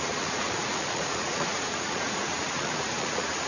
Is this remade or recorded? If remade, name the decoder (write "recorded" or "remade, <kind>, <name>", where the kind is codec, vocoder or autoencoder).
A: remade, vocoder, Vocos